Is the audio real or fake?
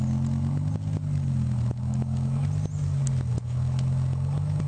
real